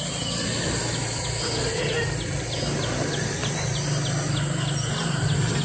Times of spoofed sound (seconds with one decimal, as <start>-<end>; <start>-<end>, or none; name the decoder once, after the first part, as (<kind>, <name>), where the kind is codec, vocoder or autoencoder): none